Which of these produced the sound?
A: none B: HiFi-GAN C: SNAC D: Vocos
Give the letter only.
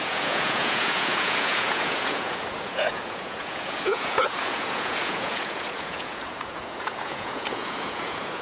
D